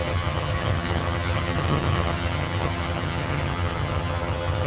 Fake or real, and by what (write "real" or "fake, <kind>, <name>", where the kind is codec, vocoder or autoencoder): fake, vocoder, HiFi-GAN